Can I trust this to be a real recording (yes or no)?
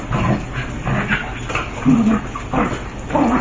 yes